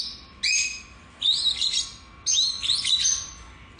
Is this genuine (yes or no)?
yes